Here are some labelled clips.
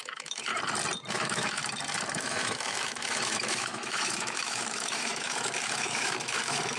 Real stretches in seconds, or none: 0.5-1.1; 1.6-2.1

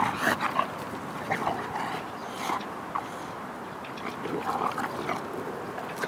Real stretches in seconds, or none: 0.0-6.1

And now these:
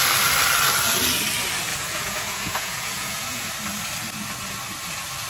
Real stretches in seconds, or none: 0.0-1.7; 3.5-5.3

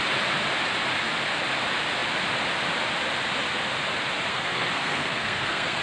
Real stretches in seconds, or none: 0.0-4.3